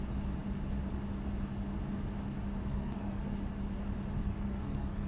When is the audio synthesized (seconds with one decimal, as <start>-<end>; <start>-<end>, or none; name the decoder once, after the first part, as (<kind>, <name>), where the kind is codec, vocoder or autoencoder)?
2.7-3.3 (codec, SNAC); 4.2-5.1